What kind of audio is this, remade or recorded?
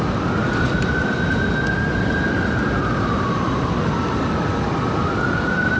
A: recorded